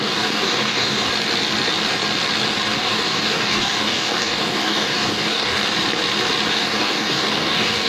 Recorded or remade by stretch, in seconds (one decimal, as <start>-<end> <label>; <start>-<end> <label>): 0.0-1.1 remade; 1.1-2.8 recorded; 2.8-5.6 remade; 5.6-6.5 recorded; 6.5-7.9 remade